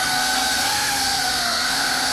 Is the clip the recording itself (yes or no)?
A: no